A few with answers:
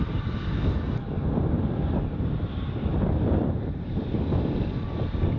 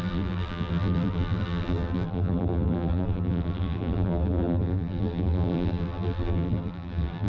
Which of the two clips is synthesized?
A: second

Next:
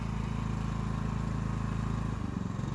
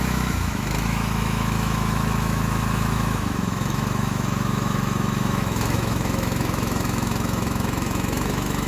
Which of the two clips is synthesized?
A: second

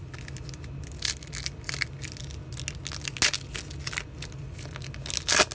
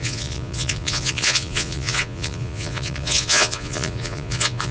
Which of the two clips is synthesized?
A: second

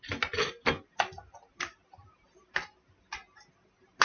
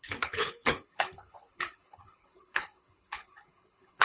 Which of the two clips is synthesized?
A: second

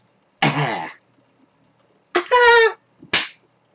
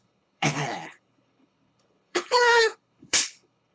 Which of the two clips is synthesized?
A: second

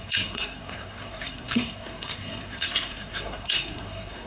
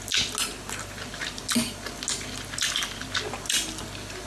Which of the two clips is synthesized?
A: first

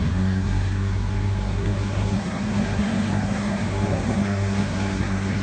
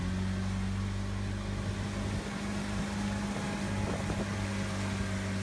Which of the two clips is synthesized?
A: first